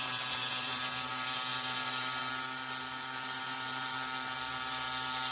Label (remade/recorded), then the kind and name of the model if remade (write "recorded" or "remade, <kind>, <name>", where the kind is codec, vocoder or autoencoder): recorded